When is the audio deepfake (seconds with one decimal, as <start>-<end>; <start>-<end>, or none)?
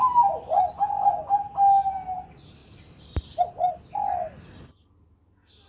none